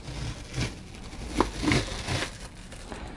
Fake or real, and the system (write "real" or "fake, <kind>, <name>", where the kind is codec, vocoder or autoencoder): real